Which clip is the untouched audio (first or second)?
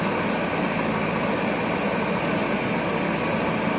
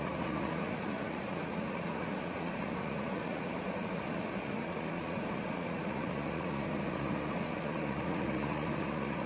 first